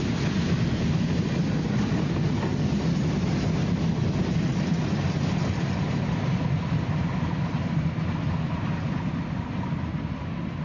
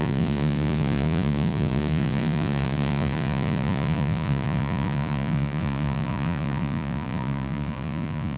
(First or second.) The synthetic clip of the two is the second